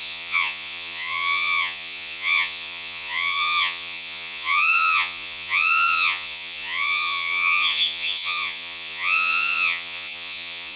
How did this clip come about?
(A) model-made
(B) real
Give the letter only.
A